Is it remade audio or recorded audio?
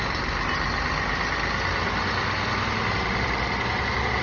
recorded